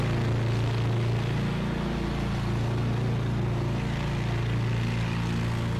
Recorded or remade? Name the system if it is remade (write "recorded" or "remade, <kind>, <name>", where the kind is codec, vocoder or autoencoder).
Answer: recorded